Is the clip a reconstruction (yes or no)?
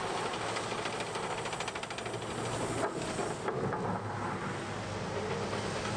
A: no